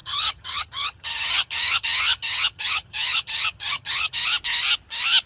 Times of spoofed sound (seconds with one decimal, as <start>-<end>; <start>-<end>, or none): 0.0-4.2